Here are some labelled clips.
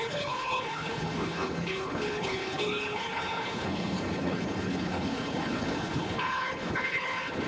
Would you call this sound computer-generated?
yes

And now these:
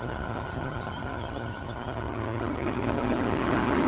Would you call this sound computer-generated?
yes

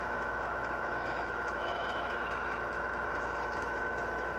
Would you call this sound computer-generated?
yes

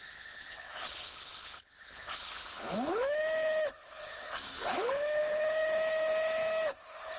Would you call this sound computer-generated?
yes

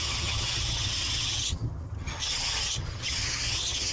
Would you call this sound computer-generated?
yes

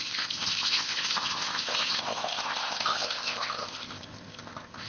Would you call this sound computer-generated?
yes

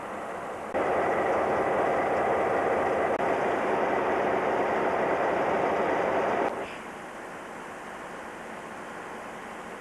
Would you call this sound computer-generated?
no